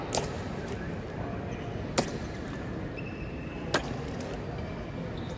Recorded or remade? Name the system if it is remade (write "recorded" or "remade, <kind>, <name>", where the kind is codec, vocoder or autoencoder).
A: recorded